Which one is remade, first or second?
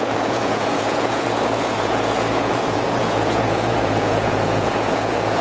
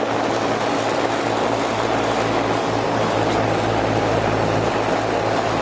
first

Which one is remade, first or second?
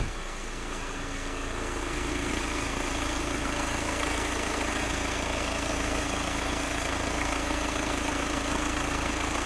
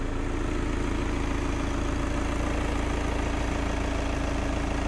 first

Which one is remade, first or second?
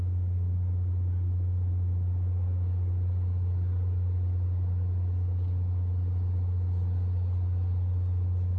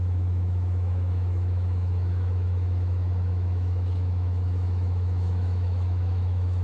second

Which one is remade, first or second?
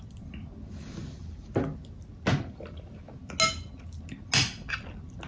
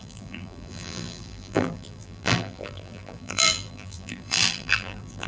second